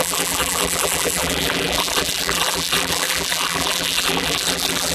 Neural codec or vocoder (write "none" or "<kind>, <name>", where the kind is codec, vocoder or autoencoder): vocoder, BigVGAN v2